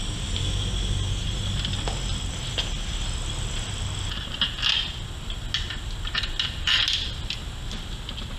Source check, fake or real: real